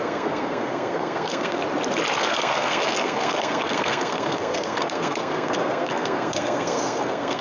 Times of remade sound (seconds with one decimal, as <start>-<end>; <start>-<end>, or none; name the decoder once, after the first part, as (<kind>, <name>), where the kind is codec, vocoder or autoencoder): 0.0-1.6 (codec, SNAC); 2.2-7.4